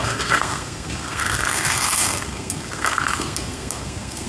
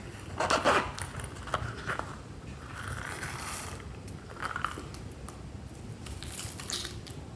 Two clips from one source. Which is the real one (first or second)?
second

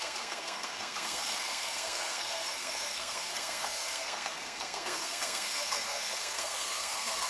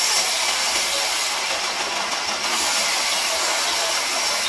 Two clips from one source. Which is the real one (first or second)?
second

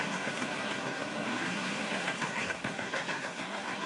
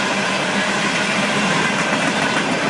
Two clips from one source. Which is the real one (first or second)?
second